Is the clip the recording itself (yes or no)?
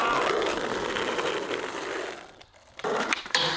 no